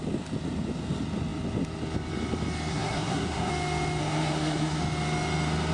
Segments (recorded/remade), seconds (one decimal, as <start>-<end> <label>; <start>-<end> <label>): 0.0-2.7 recorded; 2.7-3.5 remade; 3.5-4.0 recorded; 4.0-4.8 remade; 4.8-5.7 recorded